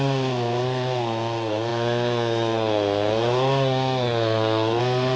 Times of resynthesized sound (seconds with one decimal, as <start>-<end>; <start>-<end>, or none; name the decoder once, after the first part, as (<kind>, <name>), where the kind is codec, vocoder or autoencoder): 0.0-5.2 (codec, SNAC)